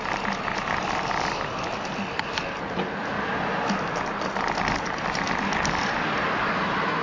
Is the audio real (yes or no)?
yes